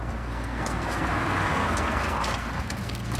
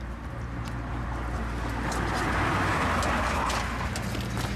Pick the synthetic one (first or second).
first